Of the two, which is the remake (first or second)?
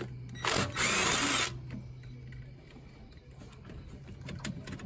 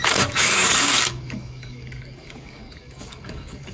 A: second